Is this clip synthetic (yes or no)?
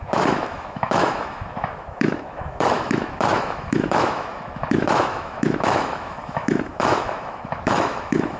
yes